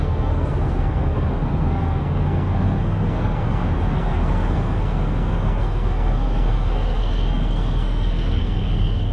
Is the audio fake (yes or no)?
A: yes